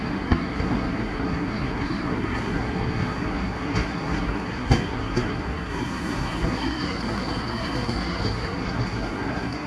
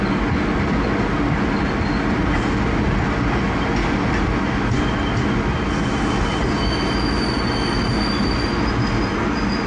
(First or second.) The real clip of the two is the second